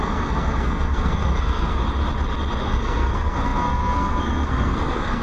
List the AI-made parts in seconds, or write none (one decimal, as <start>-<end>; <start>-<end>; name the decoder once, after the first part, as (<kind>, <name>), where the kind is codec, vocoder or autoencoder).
0.0-1.8 (codec, SNAC); 2.6-5.2